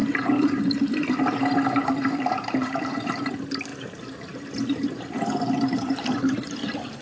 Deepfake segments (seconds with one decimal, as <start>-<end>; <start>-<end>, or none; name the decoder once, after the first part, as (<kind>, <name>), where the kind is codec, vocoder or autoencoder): 0.0-3.3 (vocoder, BigVGAN v2); 3.7-7.0